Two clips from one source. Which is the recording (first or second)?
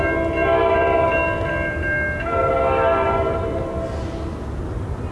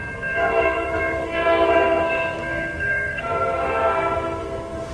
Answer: first